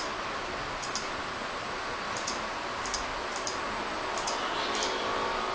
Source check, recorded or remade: recorded